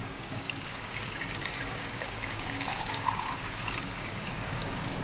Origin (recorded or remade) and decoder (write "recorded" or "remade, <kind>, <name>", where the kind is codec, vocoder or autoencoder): remade, codec, DAC